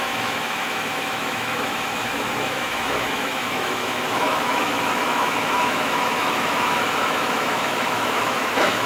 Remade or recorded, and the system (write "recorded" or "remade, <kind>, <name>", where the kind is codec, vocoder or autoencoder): remade, autoencoder, DAC-VAE